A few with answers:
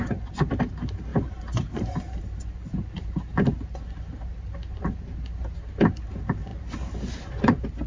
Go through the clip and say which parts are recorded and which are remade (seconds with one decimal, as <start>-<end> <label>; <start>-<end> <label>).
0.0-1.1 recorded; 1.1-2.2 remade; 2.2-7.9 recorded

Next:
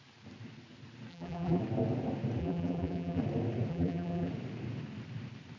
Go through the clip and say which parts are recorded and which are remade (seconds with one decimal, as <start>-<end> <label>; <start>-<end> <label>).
0.0-1.1 recorded; 1.1-1.6 remade; 1.6-2.4 recorded; 2.4-3.2 remade; 3.2-3.7 recorded; 3.7-4.3 remade; 4.3-5.6 recorded

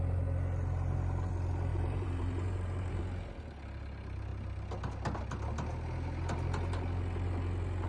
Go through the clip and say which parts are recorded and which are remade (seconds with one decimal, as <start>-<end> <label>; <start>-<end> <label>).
0.0-1.7 recorded; 1.7-3.0 remade; 3.0-7.9 recorded

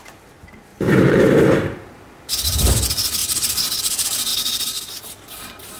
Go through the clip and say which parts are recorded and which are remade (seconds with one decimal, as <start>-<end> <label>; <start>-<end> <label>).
0.0-0.7 recorded; 0.7-2.7 remade; 2.7-5.8 recorded

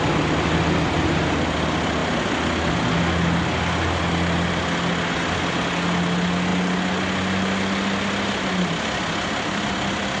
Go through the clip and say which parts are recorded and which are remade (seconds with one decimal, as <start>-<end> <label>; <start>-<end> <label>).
0.0-10.2 recorded

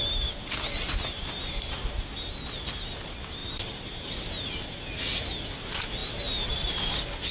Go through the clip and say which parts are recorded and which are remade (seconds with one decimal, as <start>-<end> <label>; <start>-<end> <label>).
0.0-3.4 recorded; 3.4-4.5 remade; 4.5-7.3 recorded

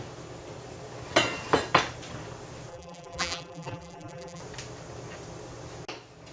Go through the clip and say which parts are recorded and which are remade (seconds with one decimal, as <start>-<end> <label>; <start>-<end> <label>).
0.0-2.7 recorded; 2.7-4.4 remade; 4.4-6.3 recorded